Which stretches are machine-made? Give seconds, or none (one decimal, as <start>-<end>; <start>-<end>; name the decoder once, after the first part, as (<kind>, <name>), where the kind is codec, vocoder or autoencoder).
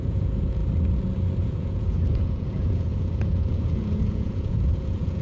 0.0-0.6 (vocoder, Vocos); 1.4-5.2